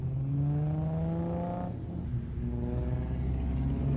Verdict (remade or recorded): recorded